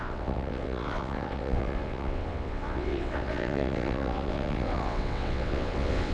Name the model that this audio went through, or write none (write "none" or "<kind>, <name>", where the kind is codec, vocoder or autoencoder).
vocoder, WaveNeXt